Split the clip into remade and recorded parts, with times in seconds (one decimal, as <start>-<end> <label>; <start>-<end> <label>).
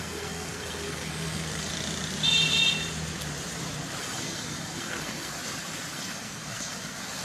0.0-1.7 remade; 1.7-4.0 recorded; 4.0-5.4 remade; 5.4-5.9 recorded; 5.9-7.2 remade